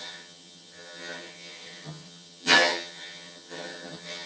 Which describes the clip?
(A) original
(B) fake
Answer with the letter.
B